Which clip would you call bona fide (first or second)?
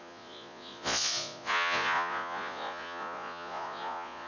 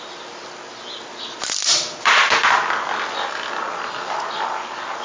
second